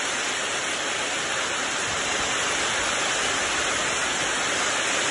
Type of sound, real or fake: real